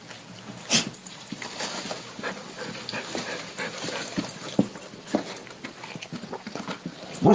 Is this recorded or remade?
recorded